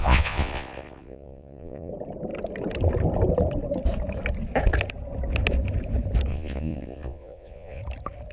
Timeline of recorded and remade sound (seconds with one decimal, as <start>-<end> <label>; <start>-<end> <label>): 0.0-1.9 remade; 1.9-6.3 recorded; 6.3-7.8 remade; 7.8-8.3 recorded